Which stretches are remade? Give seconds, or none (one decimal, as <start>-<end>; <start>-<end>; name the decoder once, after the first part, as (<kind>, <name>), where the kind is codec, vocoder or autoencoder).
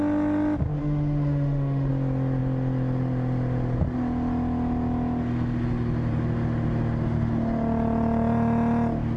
0.8-1.9 (autoencoder, DAC-VAE)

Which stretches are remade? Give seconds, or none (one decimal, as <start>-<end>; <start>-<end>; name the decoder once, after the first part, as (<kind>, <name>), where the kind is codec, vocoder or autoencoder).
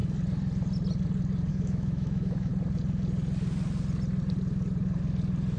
1.5-2.5 (autoencoder, DAC-VAE)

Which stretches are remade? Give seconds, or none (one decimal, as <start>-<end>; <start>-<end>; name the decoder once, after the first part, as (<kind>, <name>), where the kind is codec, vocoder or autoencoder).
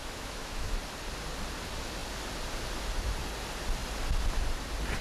0.0-0.8 (autoencoder, DAC-VAE)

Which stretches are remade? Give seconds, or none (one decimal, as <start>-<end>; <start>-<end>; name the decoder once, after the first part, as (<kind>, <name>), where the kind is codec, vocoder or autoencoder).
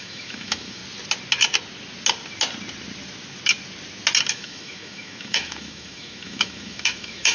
0.0-0.8 (autoencoder, DAC-VAE); 4.3-7.3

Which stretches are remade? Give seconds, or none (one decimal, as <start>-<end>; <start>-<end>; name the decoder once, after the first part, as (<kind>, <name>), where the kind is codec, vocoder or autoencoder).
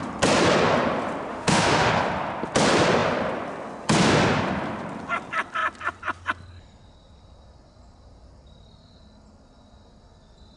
1.3-1.9 (autoencoder, DAC-VAE)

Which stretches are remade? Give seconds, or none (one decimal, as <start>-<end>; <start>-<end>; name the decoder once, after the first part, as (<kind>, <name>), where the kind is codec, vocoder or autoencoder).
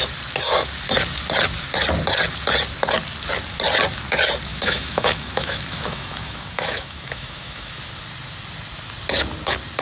4.5-7.8 (autoencoder, DAC-VAE)